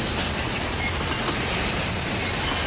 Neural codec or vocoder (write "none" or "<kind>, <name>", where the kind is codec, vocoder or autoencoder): none